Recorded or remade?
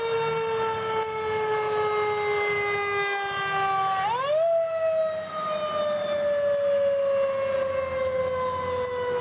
recorded